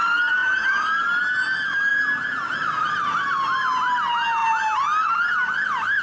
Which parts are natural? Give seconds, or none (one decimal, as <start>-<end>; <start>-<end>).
0.0-0.4; 1.2-6.0